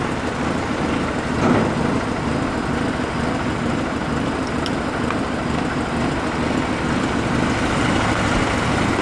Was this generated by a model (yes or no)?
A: no